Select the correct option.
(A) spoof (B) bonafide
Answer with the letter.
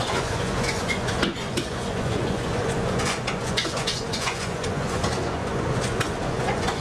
A